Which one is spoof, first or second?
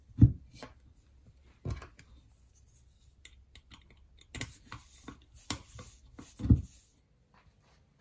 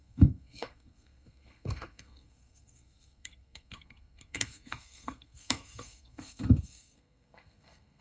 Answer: second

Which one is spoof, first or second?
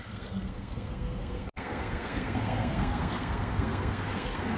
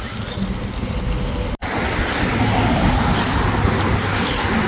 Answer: first